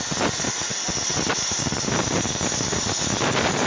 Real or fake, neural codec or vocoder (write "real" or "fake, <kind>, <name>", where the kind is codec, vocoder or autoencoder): real